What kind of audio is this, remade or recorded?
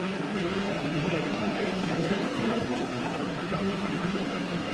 remade